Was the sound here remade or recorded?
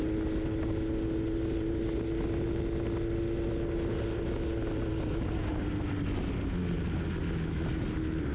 recorded